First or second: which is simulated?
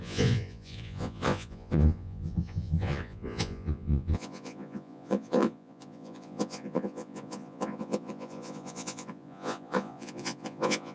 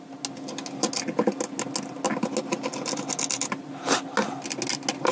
first